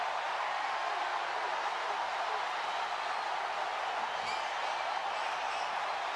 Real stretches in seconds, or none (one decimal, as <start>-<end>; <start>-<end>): 0.0-1.1; 2.3-6.2